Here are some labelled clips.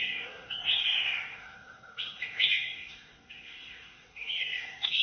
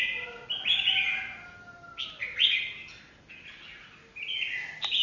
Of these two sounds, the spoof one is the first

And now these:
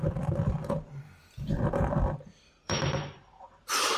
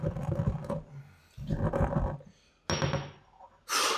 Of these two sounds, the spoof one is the first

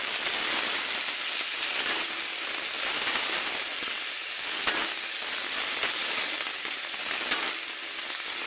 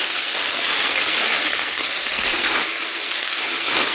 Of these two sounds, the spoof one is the second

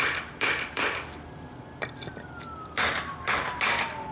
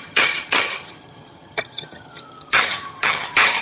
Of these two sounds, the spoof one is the second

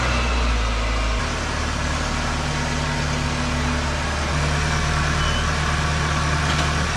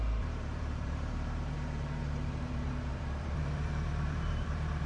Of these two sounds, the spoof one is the second